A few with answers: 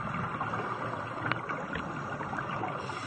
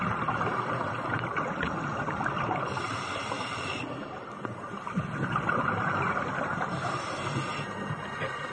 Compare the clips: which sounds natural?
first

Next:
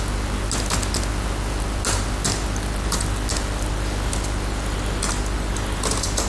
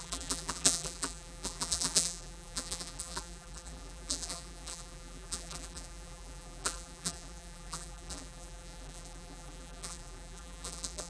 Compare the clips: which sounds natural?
first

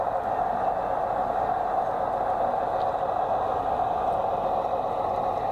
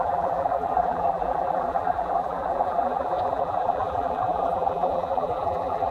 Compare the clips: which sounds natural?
first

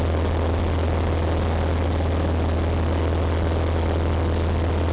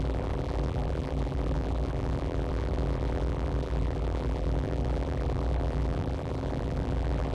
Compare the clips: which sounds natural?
first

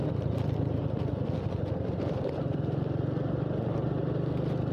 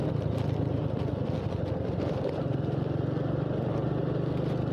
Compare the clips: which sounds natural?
second